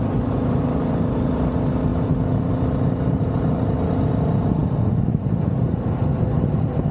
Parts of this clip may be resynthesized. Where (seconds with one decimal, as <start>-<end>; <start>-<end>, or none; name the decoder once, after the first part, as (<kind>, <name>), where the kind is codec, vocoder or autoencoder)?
none

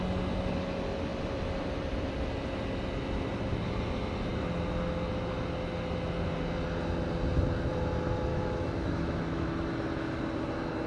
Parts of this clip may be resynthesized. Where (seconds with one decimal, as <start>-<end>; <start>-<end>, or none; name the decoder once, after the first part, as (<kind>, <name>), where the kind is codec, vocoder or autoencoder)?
8.3-9.7 (autoencoder, DAC-VAE)

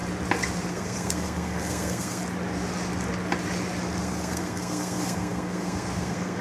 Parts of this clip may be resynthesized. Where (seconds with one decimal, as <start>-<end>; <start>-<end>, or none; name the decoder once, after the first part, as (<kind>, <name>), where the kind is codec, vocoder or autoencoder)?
0.7-2.2 (codec, SNAC); 4.0-6.4

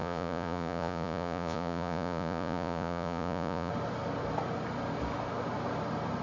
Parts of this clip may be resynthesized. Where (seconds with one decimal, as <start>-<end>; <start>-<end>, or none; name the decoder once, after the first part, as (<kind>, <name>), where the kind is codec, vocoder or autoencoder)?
0.0-3.7 (vocoder, Vocos)